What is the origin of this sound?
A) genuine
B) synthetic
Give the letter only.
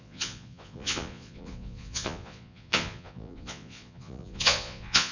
B